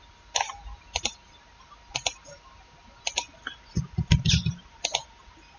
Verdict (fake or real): real